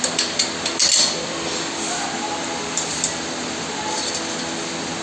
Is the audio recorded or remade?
recorded